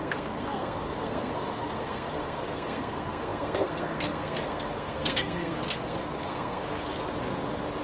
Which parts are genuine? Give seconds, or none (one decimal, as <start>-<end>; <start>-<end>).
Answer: 6.6-7.8